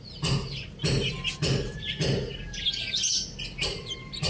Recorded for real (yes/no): yes